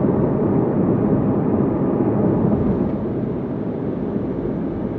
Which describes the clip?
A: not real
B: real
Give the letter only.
B